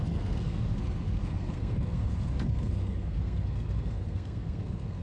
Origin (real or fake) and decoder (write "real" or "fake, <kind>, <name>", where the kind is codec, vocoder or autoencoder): fake, codec, SNAC